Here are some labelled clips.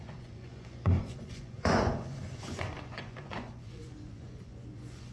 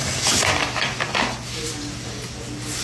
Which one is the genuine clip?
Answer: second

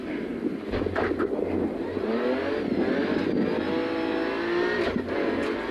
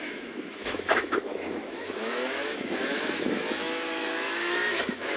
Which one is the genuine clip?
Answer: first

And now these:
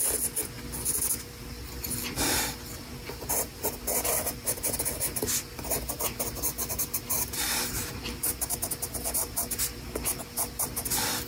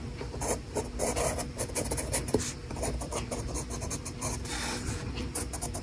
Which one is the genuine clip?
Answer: first